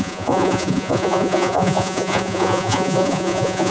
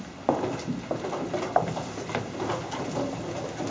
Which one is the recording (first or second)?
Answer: second